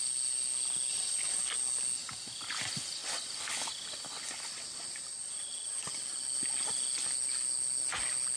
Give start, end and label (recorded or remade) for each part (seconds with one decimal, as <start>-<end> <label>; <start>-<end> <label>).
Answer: 0.0-0.9 recorded; 0.9-1.4 remade; 1.4-5.1 recorded; 5.1-5.8 remade; 5.8-8.4 recorded